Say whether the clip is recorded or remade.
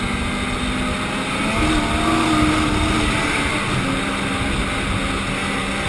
recorded